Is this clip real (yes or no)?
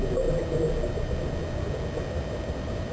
yes